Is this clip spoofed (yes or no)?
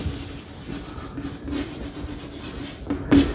no